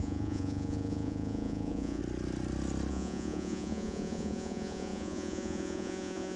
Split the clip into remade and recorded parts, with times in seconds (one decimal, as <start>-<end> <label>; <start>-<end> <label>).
0.0-2.0 remade; 2.0-2.9 recorded; 2.9-6.4 remade